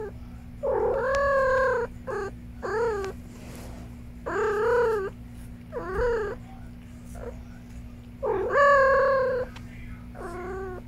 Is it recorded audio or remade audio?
recorded